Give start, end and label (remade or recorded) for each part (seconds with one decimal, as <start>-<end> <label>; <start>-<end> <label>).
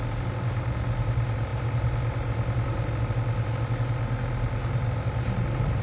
0.0-5.8 recorded